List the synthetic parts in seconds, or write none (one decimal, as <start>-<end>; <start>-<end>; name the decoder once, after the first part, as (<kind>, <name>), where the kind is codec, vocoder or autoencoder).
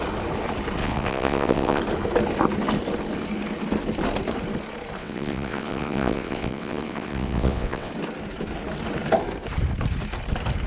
0.8-1.8 (vocoder, WaveNeXt); 5.0-7.9